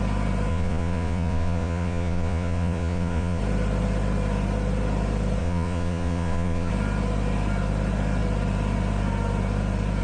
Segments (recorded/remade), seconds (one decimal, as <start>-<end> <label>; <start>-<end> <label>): 0.0-0.5 recorded; 0.5-3.4 remade; 3.4-5.4 recorded; 5.4-6.7 remade; 6.7-10.0 recorded